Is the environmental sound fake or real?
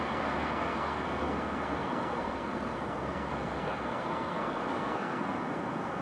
fake